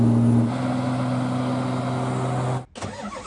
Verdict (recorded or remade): recorded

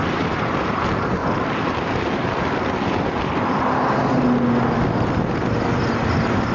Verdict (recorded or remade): recorded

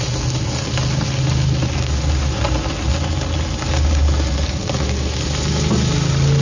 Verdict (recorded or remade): recorded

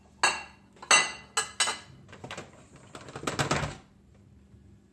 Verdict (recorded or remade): recorded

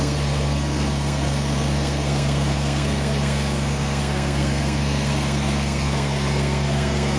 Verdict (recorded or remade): remade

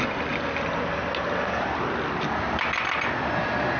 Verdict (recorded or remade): recorded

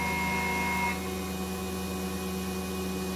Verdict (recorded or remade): recorded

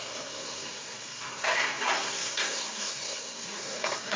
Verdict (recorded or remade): remade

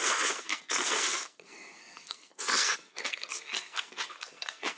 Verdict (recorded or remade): remade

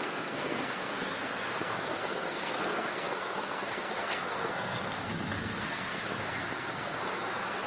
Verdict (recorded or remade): remade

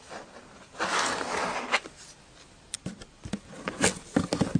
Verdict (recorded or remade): recorded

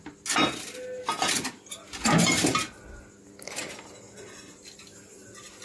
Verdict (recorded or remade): recorded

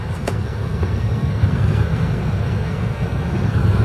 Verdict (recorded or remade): remade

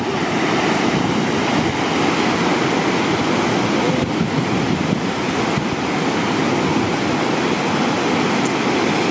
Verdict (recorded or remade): recorded